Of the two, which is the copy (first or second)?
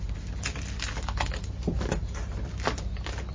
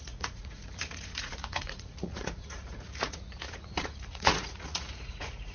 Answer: second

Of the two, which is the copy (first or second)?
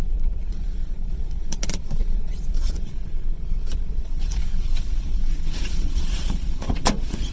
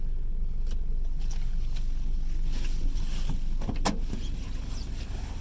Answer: first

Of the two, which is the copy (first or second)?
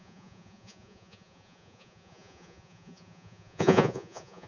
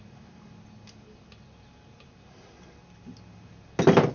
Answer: first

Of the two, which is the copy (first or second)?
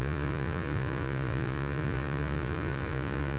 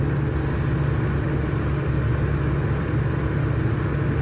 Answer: first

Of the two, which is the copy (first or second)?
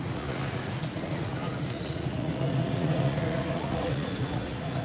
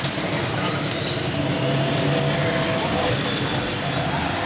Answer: first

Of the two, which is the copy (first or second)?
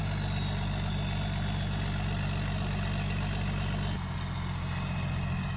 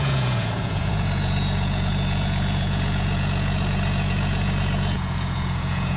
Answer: second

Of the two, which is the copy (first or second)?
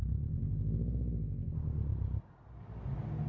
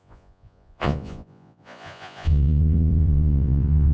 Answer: second